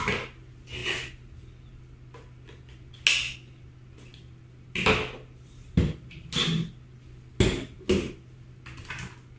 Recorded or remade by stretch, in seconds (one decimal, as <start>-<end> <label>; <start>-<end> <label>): 0.0-9.4 recorded